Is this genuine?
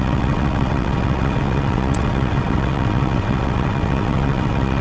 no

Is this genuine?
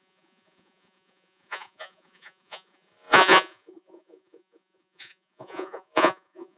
no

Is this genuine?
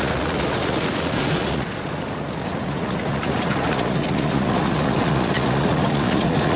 no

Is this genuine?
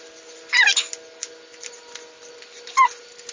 yes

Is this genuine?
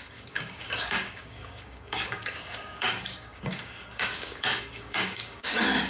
no